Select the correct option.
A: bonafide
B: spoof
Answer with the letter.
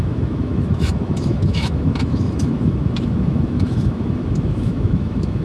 B